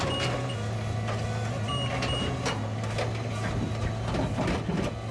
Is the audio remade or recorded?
recorded